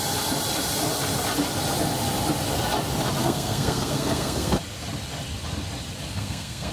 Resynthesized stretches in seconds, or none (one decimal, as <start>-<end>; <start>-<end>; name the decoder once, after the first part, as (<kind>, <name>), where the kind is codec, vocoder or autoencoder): 3.2-4.6 (codec, SNAC); 6.1-6.7